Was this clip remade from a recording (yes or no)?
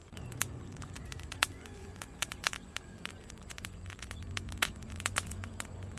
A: yes